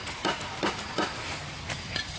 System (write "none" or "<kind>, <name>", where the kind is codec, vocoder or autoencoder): none